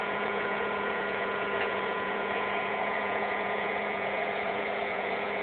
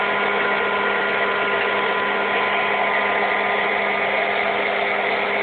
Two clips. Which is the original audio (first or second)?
second